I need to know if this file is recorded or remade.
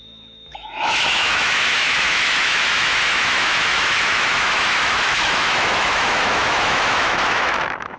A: remade